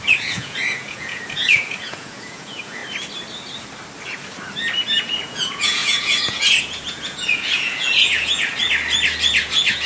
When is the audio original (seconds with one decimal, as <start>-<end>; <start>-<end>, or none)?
2.8-5.0; 8.5-9.3